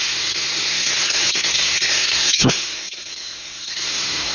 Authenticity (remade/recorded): remade